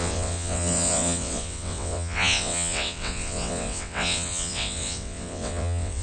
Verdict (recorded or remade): remade